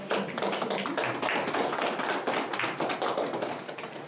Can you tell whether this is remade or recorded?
recorded